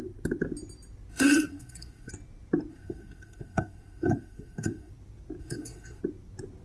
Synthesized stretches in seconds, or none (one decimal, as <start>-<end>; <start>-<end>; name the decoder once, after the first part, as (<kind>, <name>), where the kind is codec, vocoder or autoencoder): 1.1-2.1 (codec, SNAC); 2.7-4.9; 5.4-6.0